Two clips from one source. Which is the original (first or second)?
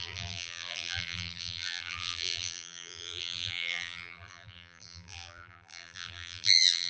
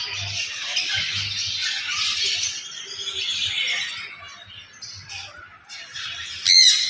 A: second